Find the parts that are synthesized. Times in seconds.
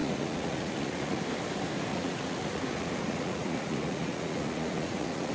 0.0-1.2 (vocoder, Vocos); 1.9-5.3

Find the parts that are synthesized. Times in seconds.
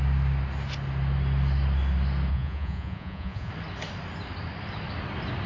2.3-3.5 (vocoder, Vocos)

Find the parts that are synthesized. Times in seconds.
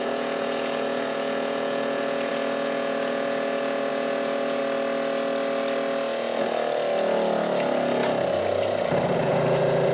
0.0-4.6 (vocoder, Vocos); 9.2-9.9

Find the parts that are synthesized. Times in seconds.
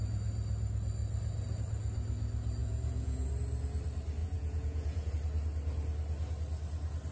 2.6-3.3 (vocoder, Vocos); 4.2-5.1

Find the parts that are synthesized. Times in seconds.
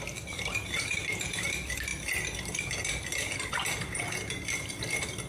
none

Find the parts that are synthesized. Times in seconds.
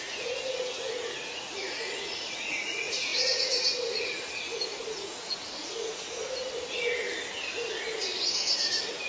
0.0-6.2 (vocoder, Vocos); 8.7-9.1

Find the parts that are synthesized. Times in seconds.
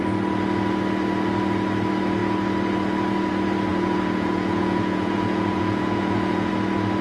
3.7-6.5 (vocoder, Vocos)